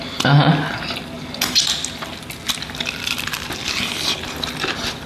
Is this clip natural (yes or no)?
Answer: yes